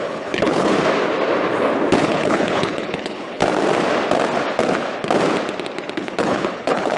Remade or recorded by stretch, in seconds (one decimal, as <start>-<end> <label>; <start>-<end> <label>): 0.0-0.7 remade; 0.7-2.0 recorded; 2.0-3.4 remade; 3.4-5.9 recorded; 5.9-7.0 remade